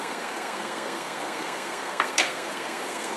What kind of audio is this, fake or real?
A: fake